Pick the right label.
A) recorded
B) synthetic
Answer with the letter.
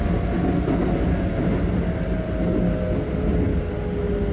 A